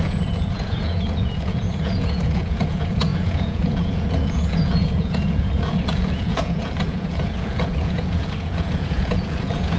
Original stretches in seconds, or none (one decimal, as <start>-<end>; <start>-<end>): none